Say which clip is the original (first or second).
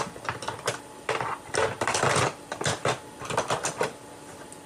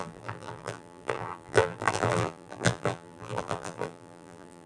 first